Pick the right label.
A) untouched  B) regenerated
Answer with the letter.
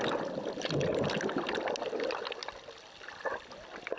A